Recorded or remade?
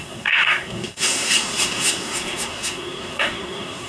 remade